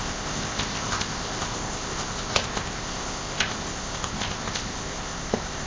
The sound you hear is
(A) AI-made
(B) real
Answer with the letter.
A